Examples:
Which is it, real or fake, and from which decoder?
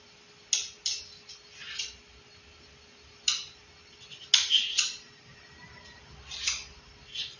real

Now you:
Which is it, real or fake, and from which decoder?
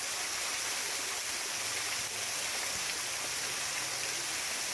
fake, vocoder, BigVGAN v2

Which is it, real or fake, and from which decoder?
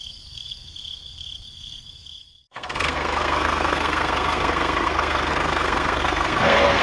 fake, codec, SNAC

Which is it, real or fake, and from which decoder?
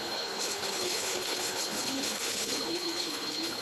fake, codec, HILCodec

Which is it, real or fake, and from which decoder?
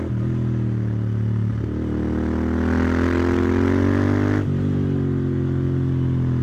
real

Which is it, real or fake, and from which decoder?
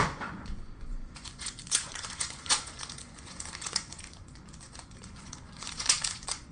fake, vocoder, Vocos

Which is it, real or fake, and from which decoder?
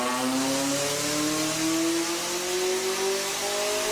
real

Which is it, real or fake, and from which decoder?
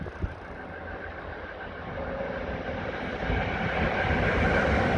real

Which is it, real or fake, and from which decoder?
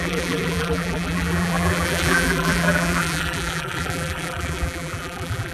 fake, vocoder, BigVGAN v2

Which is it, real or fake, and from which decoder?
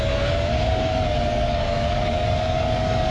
fake, codec, DAC